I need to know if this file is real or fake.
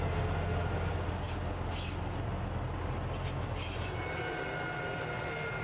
real